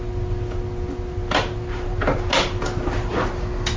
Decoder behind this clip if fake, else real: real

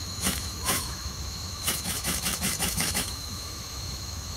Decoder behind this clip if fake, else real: fake, autoencoder, DAC-VAE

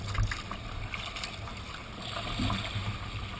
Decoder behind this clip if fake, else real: real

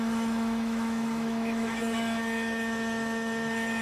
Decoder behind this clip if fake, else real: fake, autoencoder, DAC-VAE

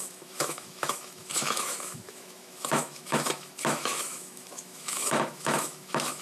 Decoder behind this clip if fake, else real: fake, autoencoder, DAC-VAE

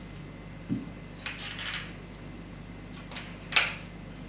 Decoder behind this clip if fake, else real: real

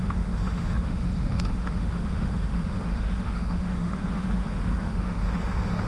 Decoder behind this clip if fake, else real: fake, autoencoder, DAC-VAE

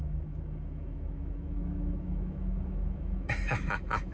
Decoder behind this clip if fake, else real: fake, autoencoder, DAC-VAE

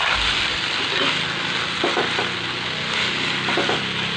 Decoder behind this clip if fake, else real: real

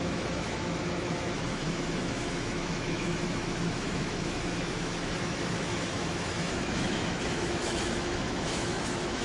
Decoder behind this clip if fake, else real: fake, autoencoder, DAC-VAE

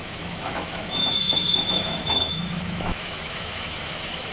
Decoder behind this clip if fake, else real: fake, autoencoder, DAC-VAE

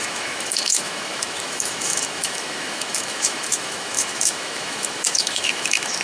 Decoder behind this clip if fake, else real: fake, autoencoder, DAC-VAE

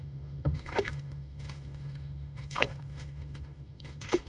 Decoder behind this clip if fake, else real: fake, autoencoder, DAC-VAE